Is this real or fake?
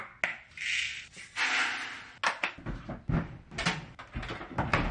real